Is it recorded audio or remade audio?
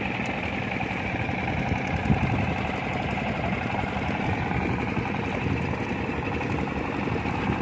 recorded